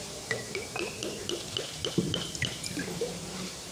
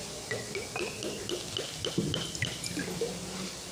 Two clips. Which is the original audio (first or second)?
second